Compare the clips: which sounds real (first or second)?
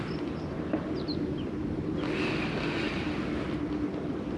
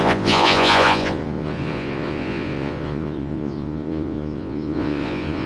first